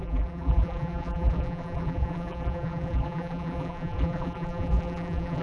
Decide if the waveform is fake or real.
fake